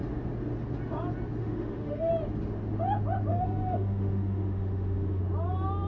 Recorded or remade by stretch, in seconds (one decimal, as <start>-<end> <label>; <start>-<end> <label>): 0.0-1.4 recorded; 1.4-2.1 remade; 2.1-3.3 recorded; 3.3-5.2 remade; 5.2-5.9 recorded